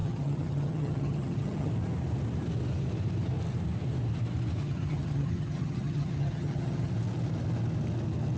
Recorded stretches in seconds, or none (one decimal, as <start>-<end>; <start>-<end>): 1.7-4.6; 6.9-8.4